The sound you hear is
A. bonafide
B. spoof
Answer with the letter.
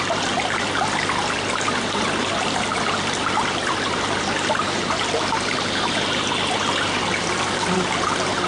A